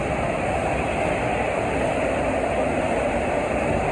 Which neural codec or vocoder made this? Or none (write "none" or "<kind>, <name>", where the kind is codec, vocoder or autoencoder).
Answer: none